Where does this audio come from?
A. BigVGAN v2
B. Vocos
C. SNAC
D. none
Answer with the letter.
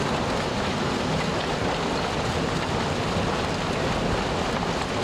D